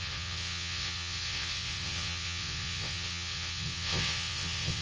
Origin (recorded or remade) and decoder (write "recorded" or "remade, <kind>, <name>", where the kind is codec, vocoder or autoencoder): remade, vocoder, WaveNeXt